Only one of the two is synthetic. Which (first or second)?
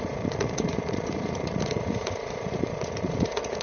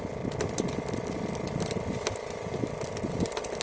first